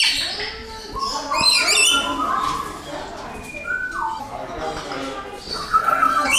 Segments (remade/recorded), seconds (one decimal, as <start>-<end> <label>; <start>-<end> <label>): 0.0-5.5 recorded; 5.5-6.4 remade